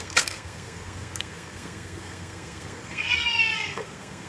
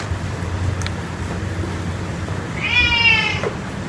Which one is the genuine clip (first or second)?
second